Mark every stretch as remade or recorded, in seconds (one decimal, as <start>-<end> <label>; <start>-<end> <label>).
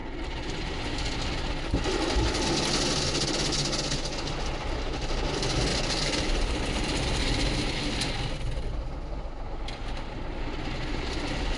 0.0-11.6 recorded